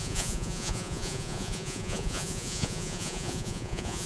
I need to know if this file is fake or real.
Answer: fake